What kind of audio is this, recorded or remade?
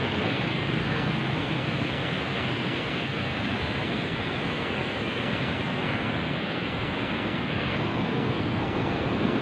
remade